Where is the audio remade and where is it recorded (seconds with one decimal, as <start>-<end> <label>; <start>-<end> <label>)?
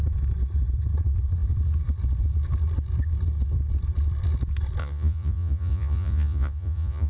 0.0-4.8 recorded; 4.8-7.1 remade